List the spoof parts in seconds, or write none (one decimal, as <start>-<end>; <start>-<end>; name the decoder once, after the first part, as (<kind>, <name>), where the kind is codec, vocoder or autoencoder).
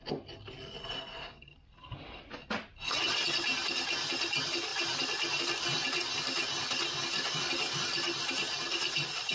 none